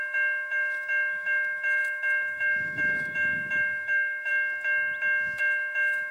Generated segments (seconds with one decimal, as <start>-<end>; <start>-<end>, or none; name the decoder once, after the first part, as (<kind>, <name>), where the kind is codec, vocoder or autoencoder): 0.0-4.3 (autoencoder, DAC-VAE); 5.4-6.1